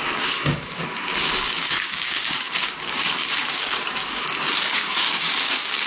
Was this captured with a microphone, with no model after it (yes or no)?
no